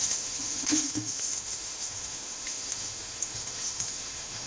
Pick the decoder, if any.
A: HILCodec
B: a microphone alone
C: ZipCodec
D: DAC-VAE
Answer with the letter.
D